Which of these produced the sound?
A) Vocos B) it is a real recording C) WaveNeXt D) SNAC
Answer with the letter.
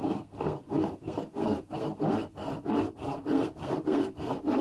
D